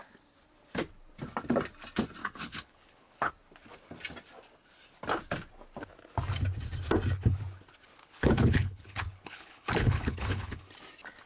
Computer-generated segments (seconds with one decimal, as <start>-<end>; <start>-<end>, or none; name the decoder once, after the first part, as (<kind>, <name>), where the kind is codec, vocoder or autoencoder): 2.2-3.3 (codec, HILCodec); 8.0-10.6